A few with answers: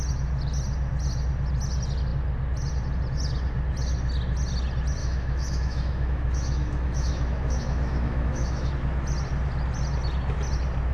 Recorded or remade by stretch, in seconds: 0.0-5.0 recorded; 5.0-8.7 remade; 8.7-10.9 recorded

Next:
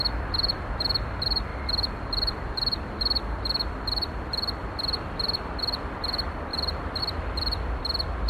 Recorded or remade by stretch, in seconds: 0.0-8.3 remade

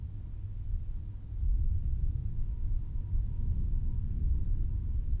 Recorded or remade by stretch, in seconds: 0.0-5.2 recorded

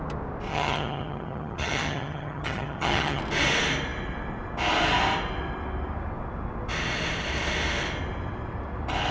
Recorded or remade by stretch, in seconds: 0.0-0.5 recorded; 0.5-3.2 remade; 3.2-9.1 recorded

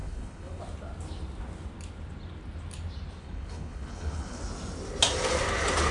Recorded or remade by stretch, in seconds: 0.0-0.6 remade; 0.6-3.2 recorded; 3.2-4.4 remade; 4.4-5.9 recorded